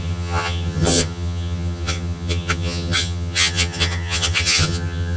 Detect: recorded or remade remade